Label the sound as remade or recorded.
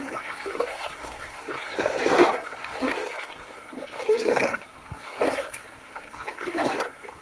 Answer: remade